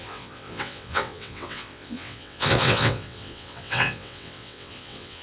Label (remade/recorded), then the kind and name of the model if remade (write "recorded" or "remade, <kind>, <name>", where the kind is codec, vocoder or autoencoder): remade, vocoder, WaveNeXt